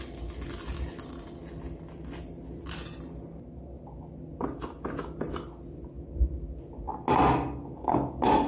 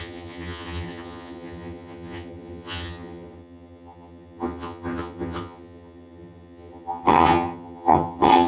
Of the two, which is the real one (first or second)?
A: first